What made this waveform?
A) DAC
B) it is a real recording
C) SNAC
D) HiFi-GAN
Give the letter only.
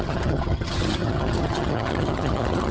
D